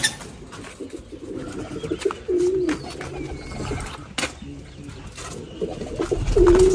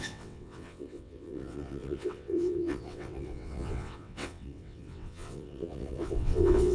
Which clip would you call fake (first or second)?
second